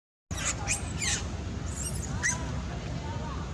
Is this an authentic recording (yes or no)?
yes